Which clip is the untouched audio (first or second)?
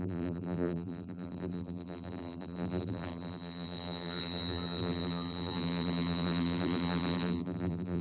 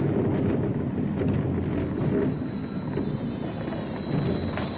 second